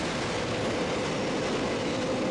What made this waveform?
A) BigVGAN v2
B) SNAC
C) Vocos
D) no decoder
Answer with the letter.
D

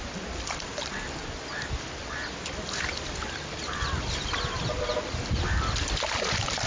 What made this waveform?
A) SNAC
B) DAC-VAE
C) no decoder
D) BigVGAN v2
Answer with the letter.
C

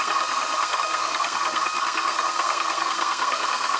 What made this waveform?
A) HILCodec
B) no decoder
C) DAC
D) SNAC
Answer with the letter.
D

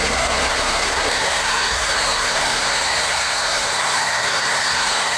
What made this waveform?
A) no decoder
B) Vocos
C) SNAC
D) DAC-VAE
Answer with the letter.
C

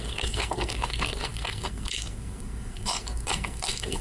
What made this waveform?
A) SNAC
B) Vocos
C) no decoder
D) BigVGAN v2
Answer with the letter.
A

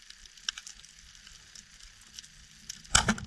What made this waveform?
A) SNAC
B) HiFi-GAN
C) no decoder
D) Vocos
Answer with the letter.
C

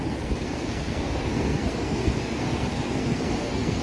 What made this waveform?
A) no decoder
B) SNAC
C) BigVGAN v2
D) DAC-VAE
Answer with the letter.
B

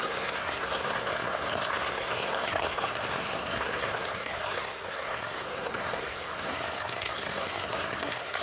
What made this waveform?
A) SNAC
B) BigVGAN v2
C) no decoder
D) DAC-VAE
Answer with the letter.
A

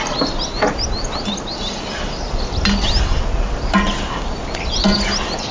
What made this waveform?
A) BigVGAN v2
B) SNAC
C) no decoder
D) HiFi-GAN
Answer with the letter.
C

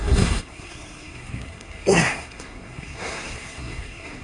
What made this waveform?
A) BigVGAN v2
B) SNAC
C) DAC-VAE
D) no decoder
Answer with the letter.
B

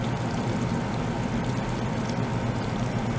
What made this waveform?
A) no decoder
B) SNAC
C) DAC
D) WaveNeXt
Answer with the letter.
A